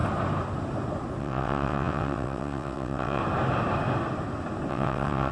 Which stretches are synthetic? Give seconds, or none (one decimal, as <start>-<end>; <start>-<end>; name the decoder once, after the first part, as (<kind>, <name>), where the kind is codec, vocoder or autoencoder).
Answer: 1.2-3.2 (vocoder, WaveNeXt); 4.7-5.3